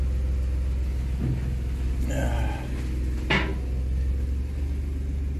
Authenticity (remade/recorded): recorded